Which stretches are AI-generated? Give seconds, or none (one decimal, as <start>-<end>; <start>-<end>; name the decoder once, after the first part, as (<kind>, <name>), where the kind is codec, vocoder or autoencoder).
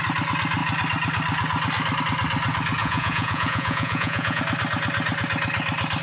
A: 2.8-4.4 (vocoder, Vocos)